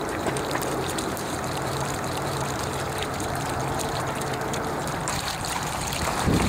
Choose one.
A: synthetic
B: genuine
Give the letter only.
A